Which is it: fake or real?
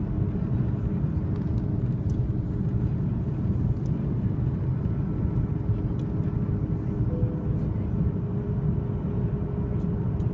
real